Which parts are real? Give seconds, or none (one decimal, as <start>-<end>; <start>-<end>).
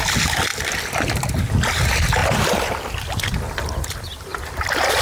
0.0-2.2; 3.1-4.3